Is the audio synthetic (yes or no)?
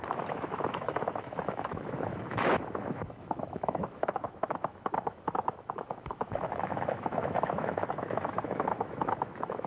yes